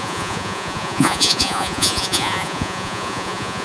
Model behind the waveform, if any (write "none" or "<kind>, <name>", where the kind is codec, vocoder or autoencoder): vocoder, Vocos